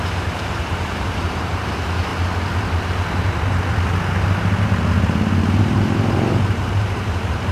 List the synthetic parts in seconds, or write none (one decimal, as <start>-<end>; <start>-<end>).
0.0-2.1; 5.6-7.5